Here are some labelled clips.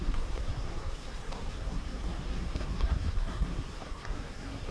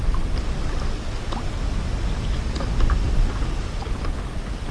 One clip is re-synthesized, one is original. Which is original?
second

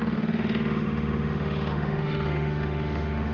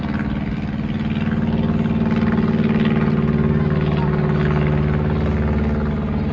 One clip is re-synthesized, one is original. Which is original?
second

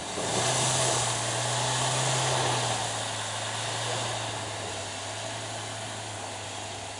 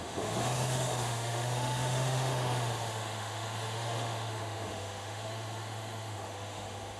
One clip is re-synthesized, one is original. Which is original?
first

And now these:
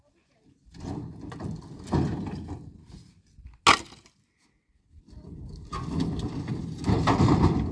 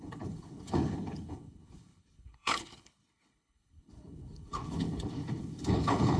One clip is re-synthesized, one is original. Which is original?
first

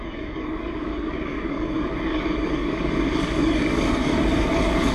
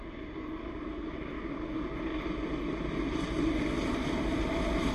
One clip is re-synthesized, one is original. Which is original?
second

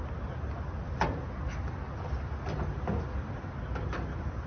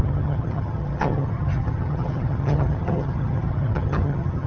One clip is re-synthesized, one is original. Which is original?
first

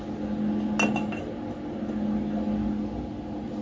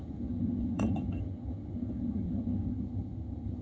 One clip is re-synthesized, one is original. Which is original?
first